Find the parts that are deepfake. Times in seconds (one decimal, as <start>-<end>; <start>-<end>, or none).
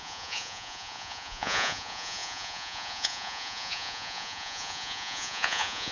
0.0-5.9